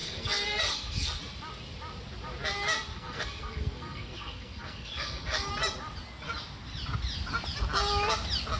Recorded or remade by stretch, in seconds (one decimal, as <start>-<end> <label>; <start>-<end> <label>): 0.0-1.2 remade; 1.2-2.9 recorded; 2.9-5.5 remade; 5.5-8.6 recorded